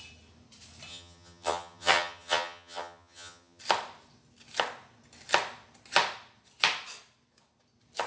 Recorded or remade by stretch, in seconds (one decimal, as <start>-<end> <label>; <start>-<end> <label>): 0.0-0.9 recorded; 0.9-3.6 remade; 3.6-8.1 recorded